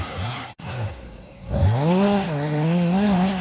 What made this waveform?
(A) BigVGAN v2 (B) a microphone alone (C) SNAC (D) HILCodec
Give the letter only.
C